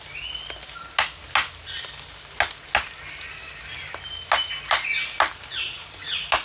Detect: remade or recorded recorded